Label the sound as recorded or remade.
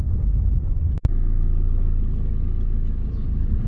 recorded